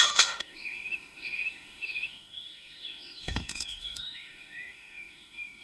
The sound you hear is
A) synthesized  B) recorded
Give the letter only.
A